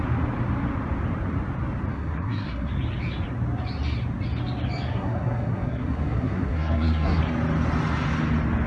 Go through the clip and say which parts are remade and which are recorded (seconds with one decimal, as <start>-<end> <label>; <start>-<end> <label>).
0.0-1.9 recorded; 1.9-2.7 remade; 2.7-4.9 recorded; 4.9-7.2 remade; 7.2-8.7 recorded